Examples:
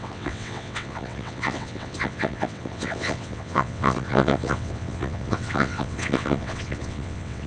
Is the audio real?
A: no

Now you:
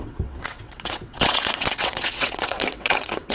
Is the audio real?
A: no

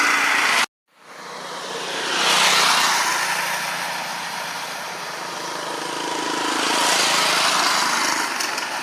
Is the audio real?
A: yes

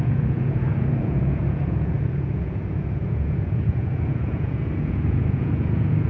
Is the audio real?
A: no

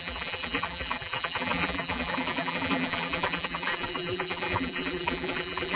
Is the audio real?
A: no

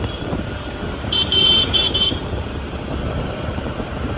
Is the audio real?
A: no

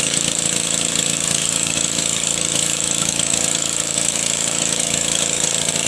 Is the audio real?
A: no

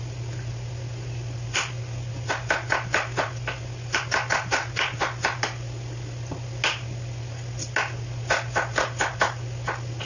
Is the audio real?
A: yes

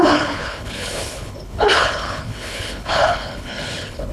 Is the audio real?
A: no